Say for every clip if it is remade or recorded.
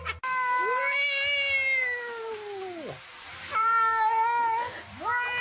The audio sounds recorded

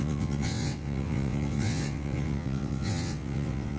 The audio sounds remade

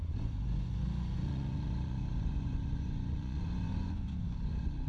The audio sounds remade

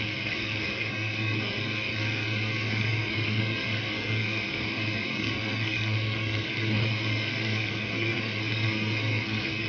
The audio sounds remade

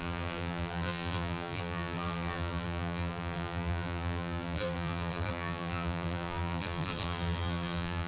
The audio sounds remade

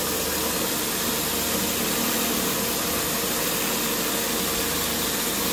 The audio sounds recorded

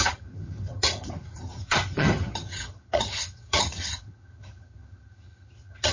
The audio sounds remade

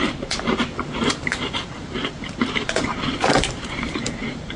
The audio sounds remade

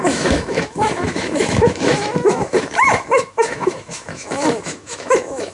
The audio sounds remade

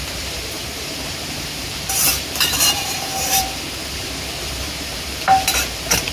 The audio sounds remade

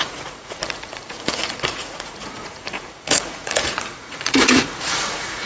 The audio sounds remade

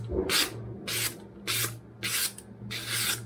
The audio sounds recorded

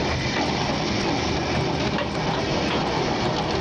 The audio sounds recorded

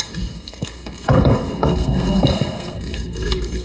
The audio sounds remade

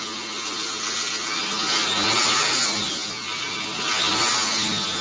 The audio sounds recorded